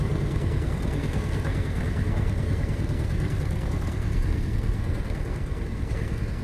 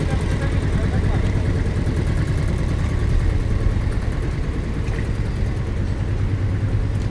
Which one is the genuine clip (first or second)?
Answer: second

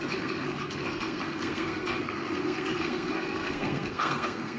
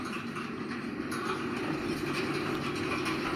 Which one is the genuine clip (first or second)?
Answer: second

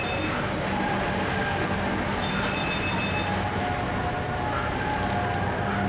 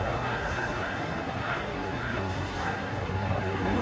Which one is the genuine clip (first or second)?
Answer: first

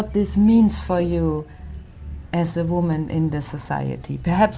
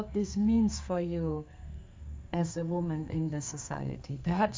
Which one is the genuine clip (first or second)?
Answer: first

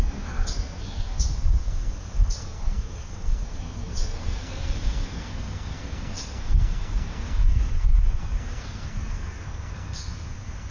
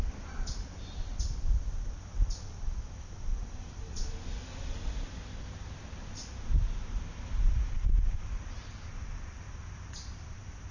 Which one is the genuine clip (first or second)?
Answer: second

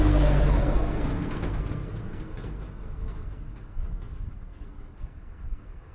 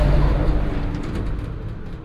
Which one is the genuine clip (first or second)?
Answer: second